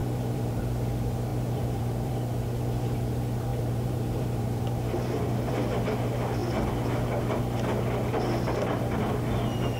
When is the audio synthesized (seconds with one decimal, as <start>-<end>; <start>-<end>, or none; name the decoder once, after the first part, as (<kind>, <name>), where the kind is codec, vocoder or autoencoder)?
0.0-0.6 (vocoder, BigVGAN v2); 1.3-2.1; 3.5-5.5

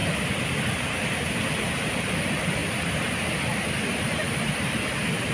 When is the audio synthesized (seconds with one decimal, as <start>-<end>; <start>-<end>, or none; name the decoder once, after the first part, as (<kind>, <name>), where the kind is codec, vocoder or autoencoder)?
none